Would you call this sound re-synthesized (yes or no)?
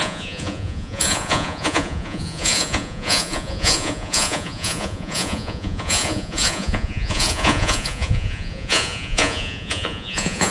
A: yes